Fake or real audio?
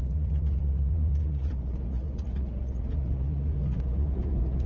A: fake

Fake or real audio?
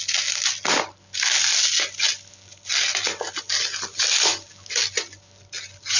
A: real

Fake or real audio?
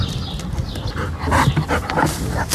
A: real